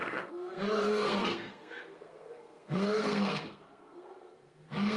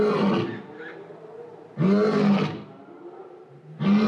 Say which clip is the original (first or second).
second